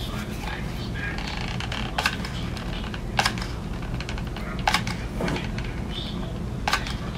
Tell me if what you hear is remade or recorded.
recorded